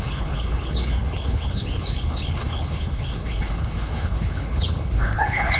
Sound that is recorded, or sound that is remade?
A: remade